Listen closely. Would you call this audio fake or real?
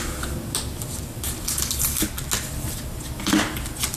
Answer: real